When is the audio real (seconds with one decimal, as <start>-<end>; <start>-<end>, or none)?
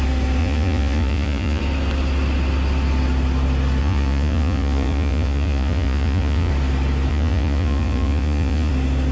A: 0.0-0.4; 1.6-3.8; 6.5-7.1; 8.7-9.1